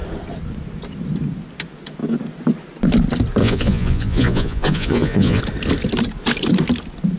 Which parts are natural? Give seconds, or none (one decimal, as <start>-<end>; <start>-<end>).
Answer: 0.0-3.4; 5.4-7.2